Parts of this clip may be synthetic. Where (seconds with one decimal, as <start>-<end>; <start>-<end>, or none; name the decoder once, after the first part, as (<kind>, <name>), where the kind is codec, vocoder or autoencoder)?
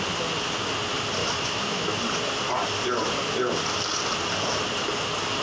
1.2-2.0 (autoencoder, DAC-VAE)